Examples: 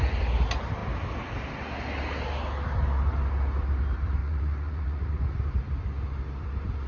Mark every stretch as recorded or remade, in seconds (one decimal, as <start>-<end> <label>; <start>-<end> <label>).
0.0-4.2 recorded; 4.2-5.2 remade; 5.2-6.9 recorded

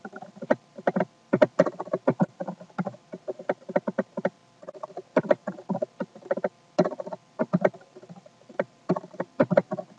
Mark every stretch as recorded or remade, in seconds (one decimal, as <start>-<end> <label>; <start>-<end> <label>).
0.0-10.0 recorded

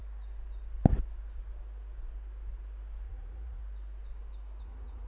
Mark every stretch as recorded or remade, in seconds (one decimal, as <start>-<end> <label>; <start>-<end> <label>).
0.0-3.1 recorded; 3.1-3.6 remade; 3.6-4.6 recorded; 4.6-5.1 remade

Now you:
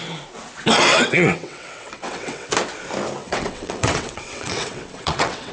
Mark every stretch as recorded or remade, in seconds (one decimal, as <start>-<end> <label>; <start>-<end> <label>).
0.0-0.9 recorded; 0.9-2.5 remade; 2.5-3.2 recorded; 3.2-5.5 remade

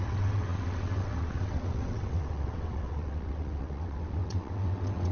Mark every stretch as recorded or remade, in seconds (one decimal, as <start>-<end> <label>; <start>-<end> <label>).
0.0-5.1 remade